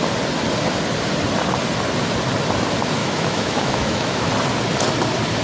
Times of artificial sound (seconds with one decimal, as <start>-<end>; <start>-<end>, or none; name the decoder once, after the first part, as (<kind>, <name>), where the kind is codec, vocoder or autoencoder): 3.0-4.3 (autoencoder, DAC-VAE)